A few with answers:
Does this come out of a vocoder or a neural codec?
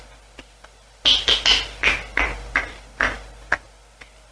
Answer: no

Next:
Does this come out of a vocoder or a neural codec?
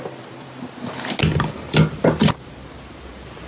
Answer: no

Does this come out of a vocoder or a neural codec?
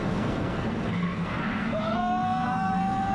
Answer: yes